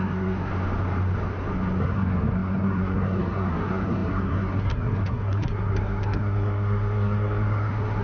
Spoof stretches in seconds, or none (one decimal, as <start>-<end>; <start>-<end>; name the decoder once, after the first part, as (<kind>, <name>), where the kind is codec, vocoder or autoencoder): 0.0-0.5 (codec, SNAC); 1.8-8.0